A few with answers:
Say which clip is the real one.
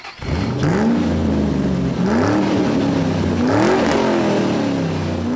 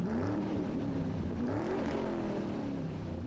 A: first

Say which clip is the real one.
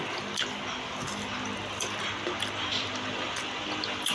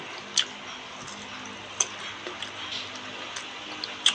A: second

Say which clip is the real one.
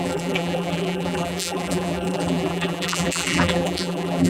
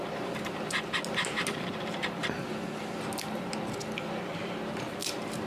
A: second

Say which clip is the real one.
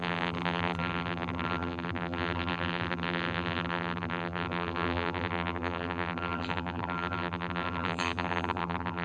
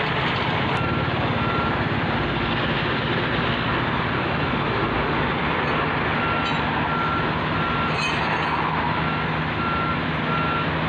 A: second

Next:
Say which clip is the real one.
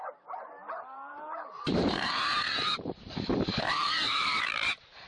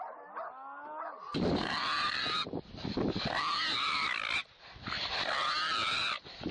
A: second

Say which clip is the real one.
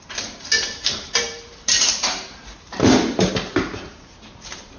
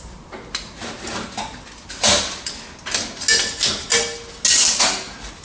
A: second